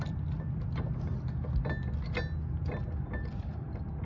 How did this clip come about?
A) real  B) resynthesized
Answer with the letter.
A